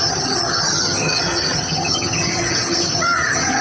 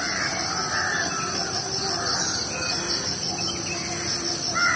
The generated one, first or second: first